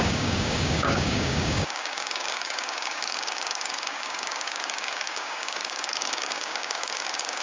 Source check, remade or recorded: remade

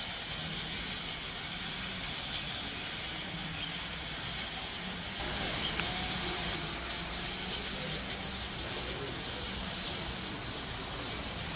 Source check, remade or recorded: recorded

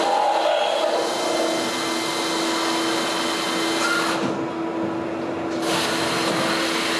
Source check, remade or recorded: recorded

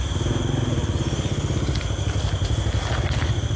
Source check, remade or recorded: recorded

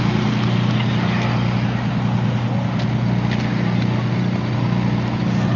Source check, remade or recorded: recorded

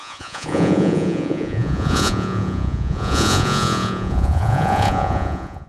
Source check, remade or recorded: remade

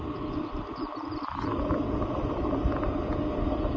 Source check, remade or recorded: recorded